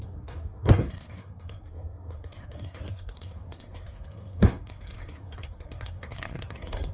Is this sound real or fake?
fake